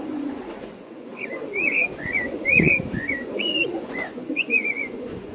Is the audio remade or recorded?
remade